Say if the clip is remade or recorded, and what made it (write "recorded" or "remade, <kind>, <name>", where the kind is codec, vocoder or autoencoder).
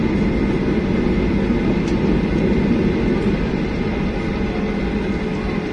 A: recorded